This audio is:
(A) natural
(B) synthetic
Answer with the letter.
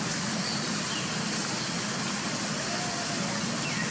A